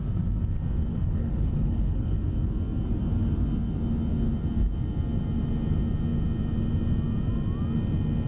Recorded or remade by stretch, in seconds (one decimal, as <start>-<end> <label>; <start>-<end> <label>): 0.0-0.9 recorded; 0.9-2.2 remade; 2.2-8.3 recorded